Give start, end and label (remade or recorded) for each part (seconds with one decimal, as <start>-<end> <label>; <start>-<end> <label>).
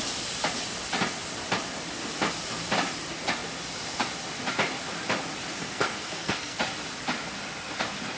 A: 0.0-5.6 recorded; 5.6-6.6 remade; 6.6-8.2 recorded